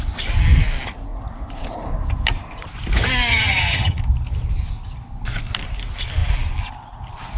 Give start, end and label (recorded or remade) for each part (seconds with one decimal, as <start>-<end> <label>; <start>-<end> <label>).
0.0-3.3 recorded; 3.3-4.0 remade; 4.0-7.4 recorded